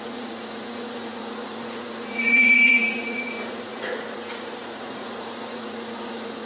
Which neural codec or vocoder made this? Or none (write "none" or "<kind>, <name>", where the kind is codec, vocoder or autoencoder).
vocoder, Vocos